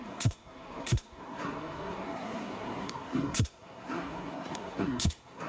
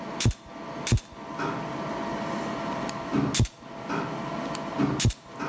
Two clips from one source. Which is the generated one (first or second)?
first